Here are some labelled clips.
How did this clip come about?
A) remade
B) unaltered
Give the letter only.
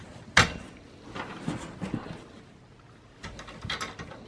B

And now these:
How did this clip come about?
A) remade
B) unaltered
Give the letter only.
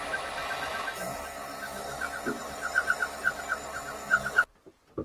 B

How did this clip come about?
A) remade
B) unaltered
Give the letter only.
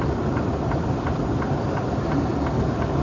B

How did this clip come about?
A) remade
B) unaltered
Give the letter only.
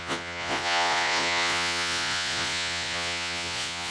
A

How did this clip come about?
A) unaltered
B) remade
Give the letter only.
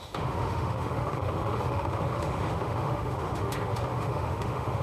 B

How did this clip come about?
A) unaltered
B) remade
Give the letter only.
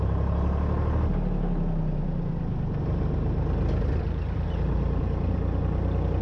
A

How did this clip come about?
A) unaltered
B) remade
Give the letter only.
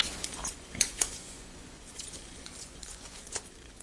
B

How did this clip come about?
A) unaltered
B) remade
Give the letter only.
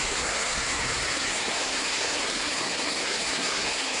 B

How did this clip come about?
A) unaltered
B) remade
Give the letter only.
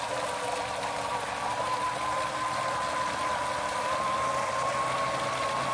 A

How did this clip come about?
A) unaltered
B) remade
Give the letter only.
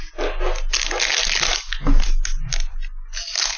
A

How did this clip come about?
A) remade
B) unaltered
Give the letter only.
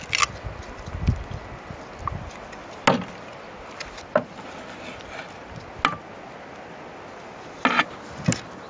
B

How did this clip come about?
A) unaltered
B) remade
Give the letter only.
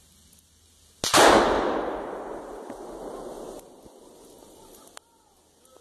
A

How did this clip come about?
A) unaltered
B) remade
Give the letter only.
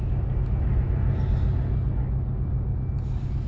A